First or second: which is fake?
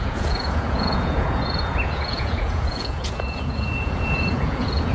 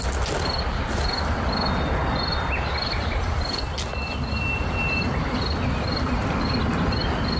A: first